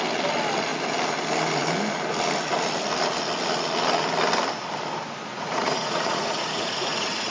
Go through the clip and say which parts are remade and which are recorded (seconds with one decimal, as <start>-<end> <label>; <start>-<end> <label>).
0.0-5.3 recorded; 5.3-7.3 remade